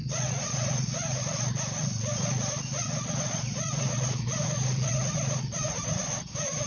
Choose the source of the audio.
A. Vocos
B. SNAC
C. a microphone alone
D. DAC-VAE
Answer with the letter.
A